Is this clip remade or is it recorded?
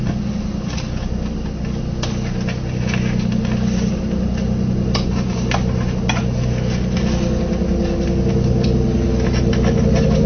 recorded